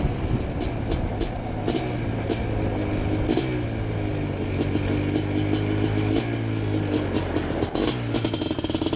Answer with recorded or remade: recorded